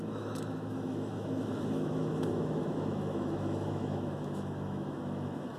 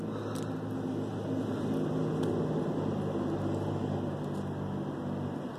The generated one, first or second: first